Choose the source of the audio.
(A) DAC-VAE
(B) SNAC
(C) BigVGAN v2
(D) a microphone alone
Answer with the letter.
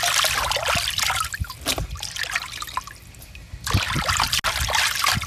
D